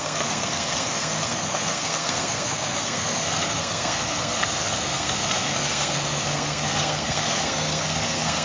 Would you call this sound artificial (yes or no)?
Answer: yes